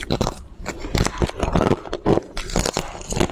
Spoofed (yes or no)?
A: no